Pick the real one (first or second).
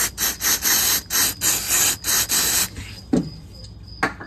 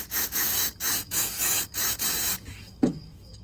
first